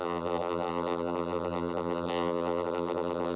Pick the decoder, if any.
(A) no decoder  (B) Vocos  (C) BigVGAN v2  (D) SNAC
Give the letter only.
C